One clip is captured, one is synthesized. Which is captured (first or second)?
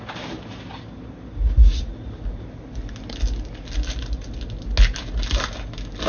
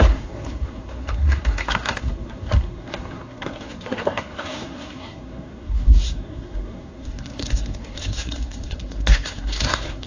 first